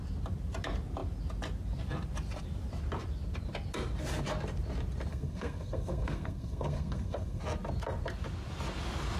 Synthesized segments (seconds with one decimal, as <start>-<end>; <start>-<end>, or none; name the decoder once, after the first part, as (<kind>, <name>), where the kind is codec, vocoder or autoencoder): 5.1-7.4 (codec, SNAC)